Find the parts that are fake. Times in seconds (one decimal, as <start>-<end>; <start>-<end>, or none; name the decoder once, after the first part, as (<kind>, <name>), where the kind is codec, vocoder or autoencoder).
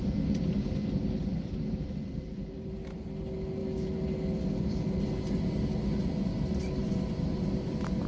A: none